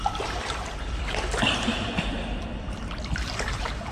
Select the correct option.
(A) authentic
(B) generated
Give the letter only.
B